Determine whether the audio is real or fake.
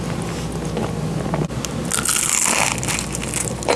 real